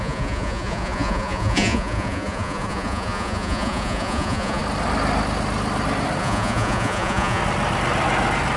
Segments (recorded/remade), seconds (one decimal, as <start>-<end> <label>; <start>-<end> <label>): 0.0-4.6 remade; 4.6-6.2 recorded; 6.2-7.4 remade; 7.4-8.6 recorded